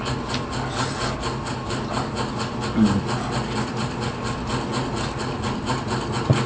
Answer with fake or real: real